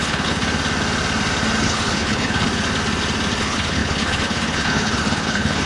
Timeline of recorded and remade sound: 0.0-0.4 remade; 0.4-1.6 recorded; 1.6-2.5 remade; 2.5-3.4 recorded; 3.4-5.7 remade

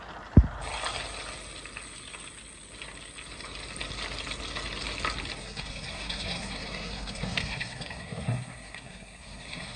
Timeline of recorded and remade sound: 0.0-5.4 recorded; 5.4-9.8 remade

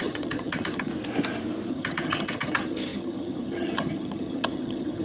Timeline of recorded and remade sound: 0.0-0.9 remade; 0.9-1.7 recorded; 1.7-5.0 remade

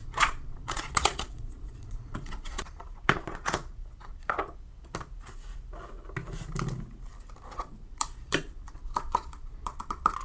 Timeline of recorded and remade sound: 0.0-4.4 remade; 4.4-7.5 recorded; 7.5-10.2 remade

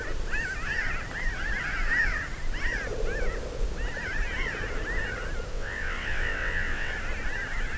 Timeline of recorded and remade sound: 0.0-5.5 recorded; 5.5-6.9 remade; 6.9-7.8 recorded